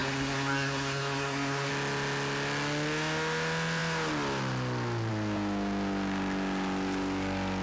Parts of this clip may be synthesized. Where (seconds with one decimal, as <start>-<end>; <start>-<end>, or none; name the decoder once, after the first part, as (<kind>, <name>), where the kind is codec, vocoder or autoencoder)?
0.0-1.7 (codec, SNAC)